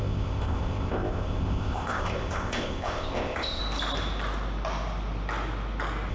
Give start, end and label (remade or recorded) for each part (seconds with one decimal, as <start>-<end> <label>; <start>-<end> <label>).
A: 0.0-3.6 remade; 3.6-6.1 recorded